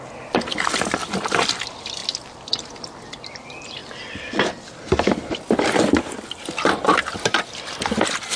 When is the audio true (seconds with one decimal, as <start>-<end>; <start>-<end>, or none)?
0.0-8.4